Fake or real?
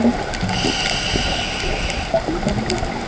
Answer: real